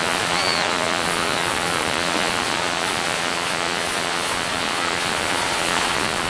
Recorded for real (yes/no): no